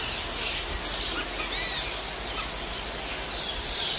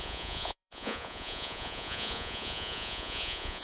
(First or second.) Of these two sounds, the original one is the first